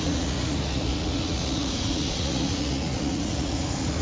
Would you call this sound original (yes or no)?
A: no